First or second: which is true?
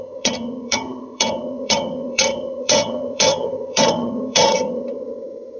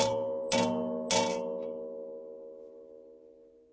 second